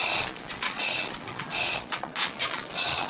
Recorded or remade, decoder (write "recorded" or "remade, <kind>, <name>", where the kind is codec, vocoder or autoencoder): remade, vocoder, Vocos